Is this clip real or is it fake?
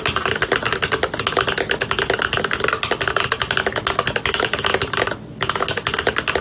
real